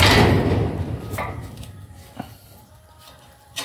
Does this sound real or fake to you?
real